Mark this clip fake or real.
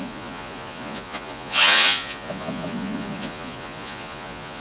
fake